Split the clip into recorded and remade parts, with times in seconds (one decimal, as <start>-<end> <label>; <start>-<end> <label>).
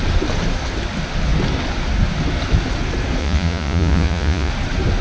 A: 0.0-3.2 recorded; 3.2-4.5 remade; 4.5-5.0 recorded